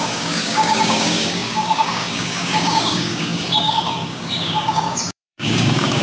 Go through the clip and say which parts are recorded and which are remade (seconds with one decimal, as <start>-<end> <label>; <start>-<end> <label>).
0.0-6.0 remade